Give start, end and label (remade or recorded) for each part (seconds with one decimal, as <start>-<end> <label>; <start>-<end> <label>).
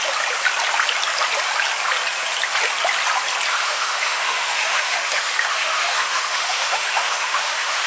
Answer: 0.0-3.5 recorded; 3.5-7.9 remade